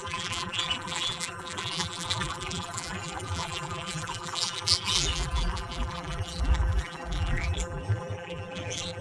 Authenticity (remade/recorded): remade